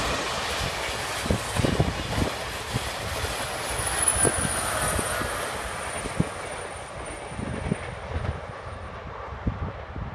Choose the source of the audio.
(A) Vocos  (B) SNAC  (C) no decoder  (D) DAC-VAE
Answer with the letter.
C